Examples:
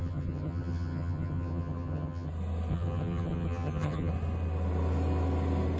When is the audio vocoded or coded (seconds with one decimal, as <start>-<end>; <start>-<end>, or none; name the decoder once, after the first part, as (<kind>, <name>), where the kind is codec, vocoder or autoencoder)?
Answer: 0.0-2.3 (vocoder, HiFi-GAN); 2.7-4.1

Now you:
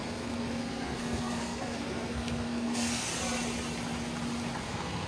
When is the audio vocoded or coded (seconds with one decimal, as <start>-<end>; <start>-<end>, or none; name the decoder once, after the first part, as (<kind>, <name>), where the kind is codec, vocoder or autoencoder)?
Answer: 0.0-3.1 (codec, SNAC); 4.6-5.1

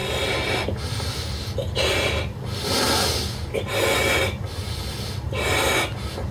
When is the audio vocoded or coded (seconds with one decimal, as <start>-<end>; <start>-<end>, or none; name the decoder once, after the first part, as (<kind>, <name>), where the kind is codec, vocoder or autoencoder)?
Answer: none

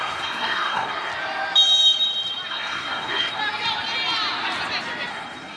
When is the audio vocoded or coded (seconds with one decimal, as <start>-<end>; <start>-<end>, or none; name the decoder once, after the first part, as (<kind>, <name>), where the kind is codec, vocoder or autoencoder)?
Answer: 0.0-1.1 (codec, SNAC); 2.5-3.4; 5.1-5.6

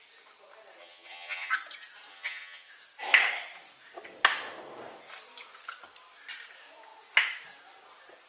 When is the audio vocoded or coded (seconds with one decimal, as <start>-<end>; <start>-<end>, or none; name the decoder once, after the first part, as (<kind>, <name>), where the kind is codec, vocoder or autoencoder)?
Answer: 0.8-1.5 (vocoder, HiFi-GAN); 2.1-2.7